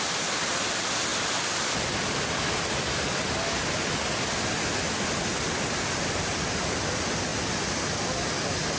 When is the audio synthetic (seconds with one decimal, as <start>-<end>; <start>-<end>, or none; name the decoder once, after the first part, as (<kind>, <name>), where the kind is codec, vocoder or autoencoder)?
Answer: none